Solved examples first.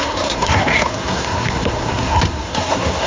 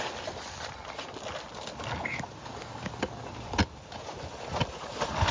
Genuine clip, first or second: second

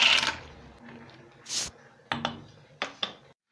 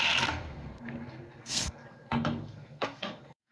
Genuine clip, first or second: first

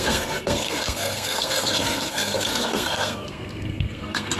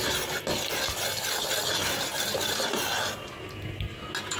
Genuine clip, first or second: second